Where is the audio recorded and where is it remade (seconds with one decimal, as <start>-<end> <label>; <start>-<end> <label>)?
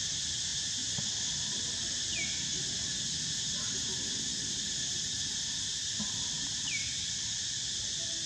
0.0-8.3 recorded